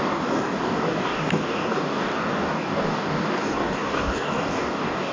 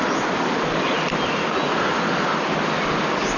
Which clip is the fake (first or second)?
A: first